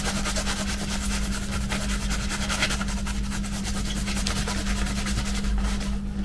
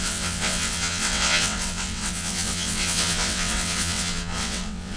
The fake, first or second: second